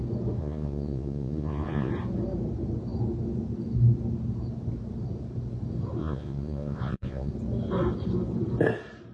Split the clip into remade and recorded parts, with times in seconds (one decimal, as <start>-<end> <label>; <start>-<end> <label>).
0.0-0.4 recorded; 0.4-1.9 remade; 1.9-6.0 recorded; 6.0-7.3 remade; 7.3-9.1 recorded